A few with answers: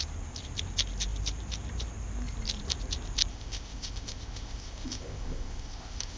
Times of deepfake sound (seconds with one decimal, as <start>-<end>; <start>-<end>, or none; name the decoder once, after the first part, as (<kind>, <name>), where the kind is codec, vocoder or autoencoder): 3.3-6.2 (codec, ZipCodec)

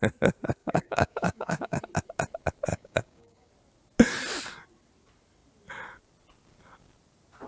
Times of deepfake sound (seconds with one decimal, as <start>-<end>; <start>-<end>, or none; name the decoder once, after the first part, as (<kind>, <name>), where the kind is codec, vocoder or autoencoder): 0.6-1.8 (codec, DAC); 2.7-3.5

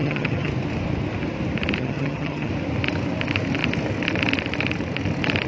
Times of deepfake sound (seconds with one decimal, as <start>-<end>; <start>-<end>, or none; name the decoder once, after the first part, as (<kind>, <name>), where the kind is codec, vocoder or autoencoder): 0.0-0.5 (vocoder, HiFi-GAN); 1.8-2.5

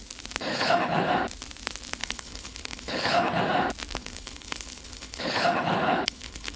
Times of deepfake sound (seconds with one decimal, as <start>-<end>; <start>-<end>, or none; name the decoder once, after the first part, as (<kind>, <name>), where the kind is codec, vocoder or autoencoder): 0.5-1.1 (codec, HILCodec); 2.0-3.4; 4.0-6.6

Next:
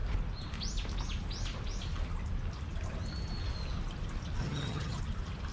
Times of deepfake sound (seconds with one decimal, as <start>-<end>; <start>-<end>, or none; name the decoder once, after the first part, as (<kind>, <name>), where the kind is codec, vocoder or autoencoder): 4.4-5.0 (vocoder, HiFi-GAN)

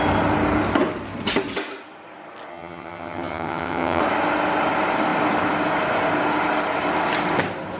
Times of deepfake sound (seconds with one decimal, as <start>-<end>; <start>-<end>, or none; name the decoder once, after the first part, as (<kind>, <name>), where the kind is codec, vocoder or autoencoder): 2.5-4.0 (vocoder, HiFi-GAN)

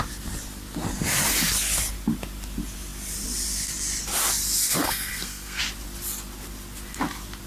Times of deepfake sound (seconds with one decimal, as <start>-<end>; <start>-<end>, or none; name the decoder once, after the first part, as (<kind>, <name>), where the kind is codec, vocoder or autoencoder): 4.8-5.6 (codec, SNAC)